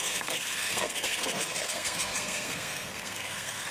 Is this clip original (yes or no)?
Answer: no